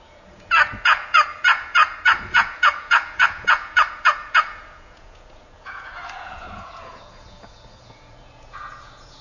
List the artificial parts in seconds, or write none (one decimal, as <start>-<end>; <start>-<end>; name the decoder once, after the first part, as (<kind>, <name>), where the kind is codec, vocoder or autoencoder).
0.0-9.2 (vocoder, Vocos)